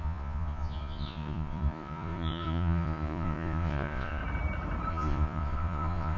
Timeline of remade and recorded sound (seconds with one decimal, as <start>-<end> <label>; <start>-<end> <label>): 0.0-4.2 remade; 4.2-4.9 recorded; 4.9-6.2 remade